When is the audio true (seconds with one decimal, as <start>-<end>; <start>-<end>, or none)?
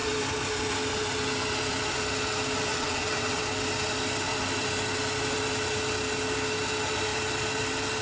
0.0-2.7; 3.4-8.0